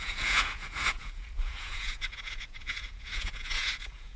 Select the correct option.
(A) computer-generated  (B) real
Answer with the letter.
A